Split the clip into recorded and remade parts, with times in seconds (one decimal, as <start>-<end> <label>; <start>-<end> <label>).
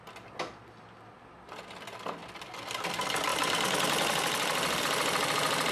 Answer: 0.0-5.7 recorded